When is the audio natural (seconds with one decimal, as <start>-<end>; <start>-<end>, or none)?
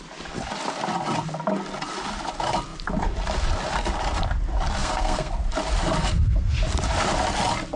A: 0.0-4.8; 5.3-6.0; 6.6-7.8